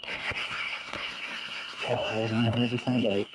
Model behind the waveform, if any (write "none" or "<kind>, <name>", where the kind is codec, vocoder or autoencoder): codec, SNAC